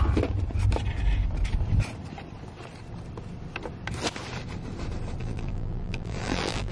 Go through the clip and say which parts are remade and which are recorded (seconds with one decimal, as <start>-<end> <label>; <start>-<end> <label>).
0.0-5.2 recorded; 5.2-6.7 remade